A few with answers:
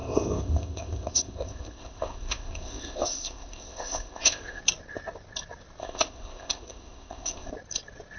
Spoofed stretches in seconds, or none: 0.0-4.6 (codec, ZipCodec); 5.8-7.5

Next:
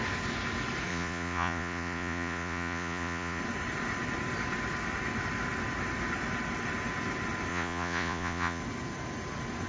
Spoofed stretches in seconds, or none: 0.9-3.4 (vocoder, Vocos); 7.5-8.6

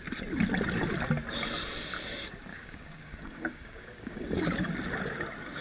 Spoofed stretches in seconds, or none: 2.5-4.7 (codec, DAC)

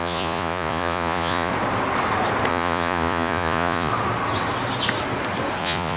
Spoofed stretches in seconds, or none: 0.0-1.5 (vocoder, Vocos); 2.5-3.9; 5.6-6.0

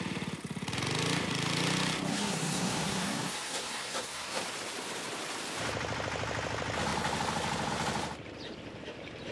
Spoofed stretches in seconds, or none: 2.1-4.4 (codec, SNAC)